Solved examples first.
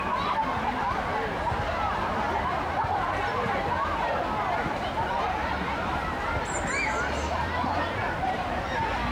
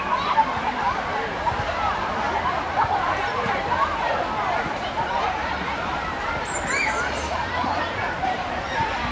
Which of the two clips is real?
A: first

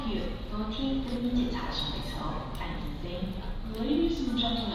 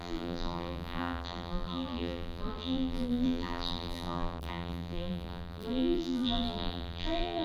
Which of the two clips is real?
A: first